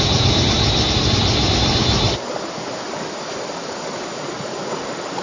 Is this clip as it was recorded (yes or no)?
yes